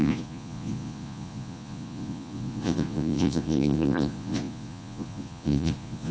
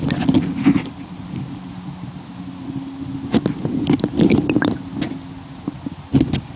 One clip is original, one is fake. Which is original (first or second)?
second